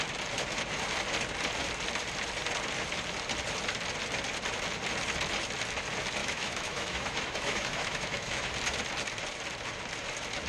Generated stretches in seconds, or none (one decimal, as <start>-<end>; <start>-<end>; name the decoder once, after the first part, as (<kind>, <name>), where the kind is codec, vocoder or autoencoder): 6.2-8.5 (autoencoder, DAC-VAE)